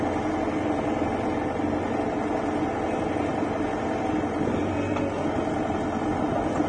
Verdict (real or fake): real